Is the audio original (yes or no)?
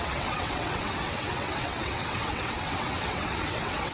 no